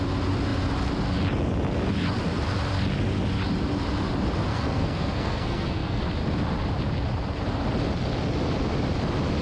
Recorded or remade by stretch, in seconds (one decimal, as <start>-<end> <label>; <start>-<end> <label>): 0.0-4.5 recorded; 4.5-6.0 remade; 6.0-9.4 recorded

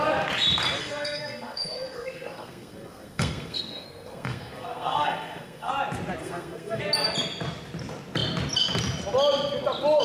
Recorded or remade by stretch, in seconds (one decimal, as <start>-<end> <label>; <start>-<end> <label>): 0.0-0.8 recorded; 0.8-5.7 remade; 5.7-6.2 recorded; 6.2-6.8 remade; 6.8-10.0 recorded

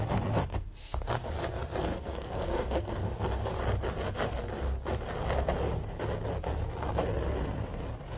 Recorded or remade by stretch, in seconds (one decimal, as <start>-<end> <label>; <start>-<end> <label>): 0.0-0.5 recorded; 0.5-1.3 remade; 1.3-1.9 recorded; 1.9-3.5 remade; 3.5-8.2 recorded

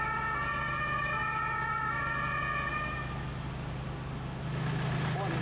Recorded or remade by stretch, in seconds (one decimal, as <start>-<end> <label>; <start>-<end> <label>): 0.0-5.4 recorded

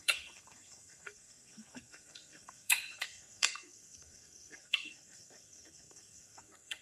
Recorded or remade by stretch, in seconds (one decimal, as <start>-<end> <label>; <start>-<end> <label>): 0.0-6.8 remade

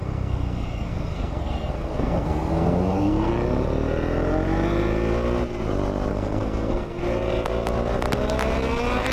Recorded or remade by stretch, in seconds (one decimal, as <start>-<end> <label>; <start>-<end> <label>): 0.0-3.3 remade; 3.3-6.1 recorded; 6.1-7.0 remade; 7.0-9.1 recorded

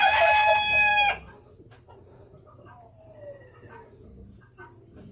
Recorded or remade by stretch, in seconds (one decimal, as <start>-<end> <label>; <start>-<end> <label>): 0.0-5.1 recorded